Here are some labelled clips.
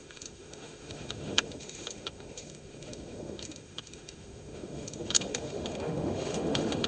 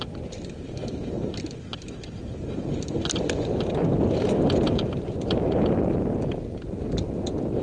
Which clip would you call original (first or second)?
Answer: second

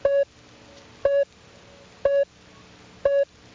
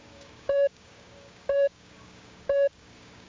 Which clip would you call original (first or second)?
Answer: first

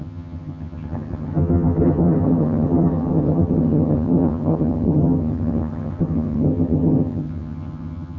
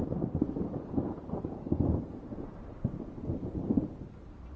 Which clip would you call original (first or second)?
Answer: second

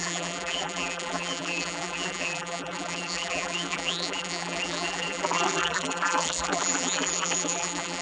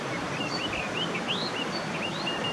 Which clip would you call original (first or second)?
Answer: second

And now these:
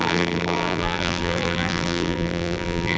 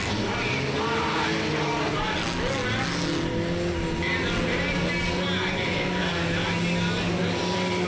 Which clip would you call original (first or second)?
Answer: second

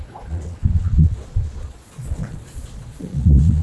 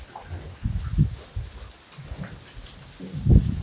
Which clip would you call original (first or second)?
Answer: second